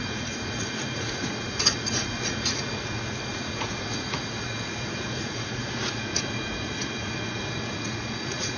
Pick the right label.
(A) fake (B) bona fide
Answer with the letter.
A